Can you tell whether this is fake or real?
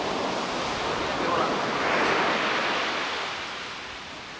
real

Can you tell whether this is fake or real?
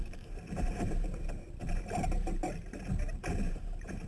fake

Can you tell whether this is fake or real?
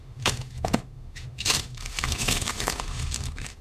fake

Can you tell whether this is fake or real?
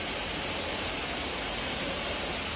fake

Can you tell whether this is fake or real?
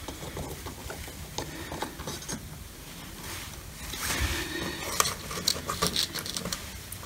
real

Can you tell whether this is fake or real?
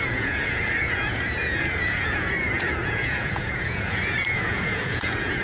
fake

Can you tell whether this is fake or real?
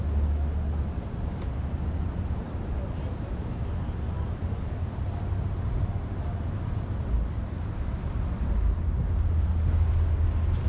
real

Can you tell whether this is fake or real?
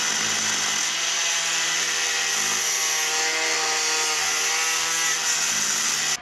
real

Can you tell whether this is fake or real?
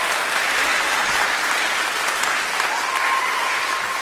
real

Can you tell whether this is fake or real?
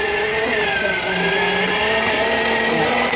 real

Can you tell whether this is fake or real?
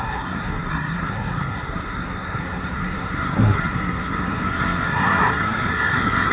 fake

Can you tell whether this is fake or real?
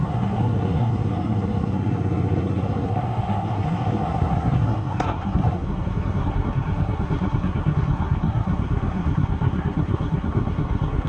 fake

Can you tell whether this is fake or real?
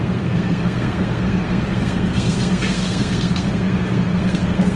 fake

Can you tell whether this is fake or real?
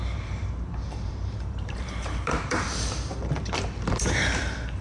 fake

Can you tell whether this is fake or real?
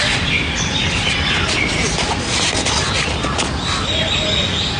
real